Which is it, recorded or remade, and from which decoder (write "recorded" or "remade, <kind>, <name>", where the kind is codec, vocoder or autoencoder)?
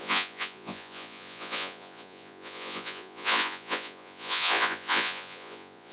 remade, vocoder, Vocos